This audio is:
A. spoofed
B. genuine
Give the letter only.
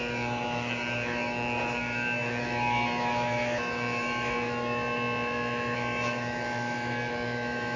A